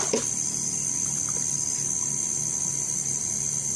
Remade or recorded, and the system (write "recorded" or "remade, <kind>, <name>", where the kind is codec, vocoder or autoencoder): recorded